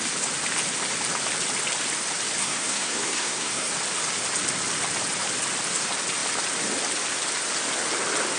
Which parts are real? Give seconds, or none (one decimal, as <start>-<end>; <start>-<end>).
0.0-2.4; 3.7-8.4